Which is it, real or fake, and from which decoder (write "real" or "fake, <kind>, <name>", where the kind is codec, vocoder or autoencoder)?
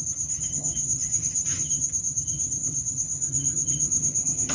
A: fake, vocoder, HiFi-GAN